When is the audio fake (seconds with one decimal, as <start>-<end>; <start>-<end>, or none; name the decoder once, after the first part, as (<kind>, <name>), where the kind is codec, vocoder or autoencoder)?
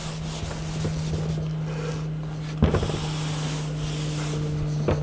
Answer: none